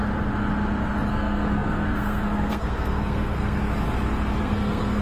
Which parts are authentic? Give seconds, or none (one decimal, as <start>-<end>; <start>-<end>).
0.0-1.1; 3.6-4.4